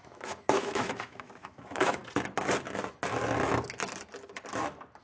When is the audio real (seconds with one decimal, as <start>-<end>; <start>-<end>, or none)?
2.0-5.0